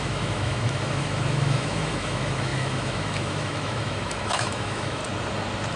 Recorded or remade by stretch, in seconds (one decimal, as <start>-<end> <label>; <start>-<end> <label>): 0.0-5.0 remade; 5.0-5.8 recorded